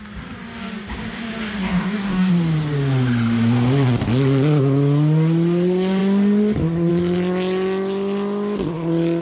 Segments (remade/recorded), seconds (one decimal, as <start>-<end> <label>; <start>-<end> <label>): 0.0-1.5 recorded; 1.5-2.3 remade; 2.3-9.2 recorded